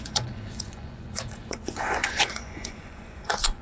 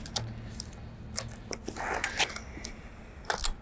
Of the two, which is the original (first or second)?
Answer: second